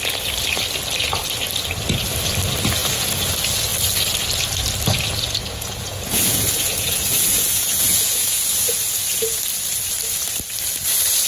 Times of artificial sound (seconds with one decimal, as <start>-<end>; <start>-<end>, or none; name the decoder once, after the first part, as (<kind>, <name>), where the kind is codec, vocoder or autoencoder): 2.8-3.3 (vocoder, Vocos); 5.4-9.4